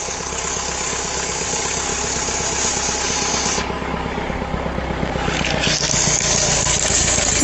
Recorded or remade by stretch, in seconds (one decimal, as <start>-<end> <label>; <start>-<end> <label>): 0.0-1.9 remade; 1.9-3.0 recorded; 3.0-7.4 remade